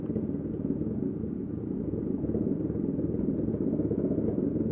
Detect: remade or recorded remade